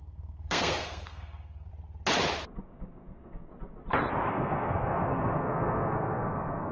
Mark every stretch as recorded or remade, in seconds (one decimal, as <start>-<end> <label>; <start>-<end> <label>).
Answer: 0.0-1.7 remade; 1.7-2.6 recorded; 2.6-3.5 remade; 3.5-4.3 recorded; 4.3-6.7 remade